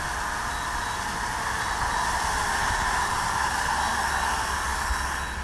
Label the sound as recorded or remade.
recorded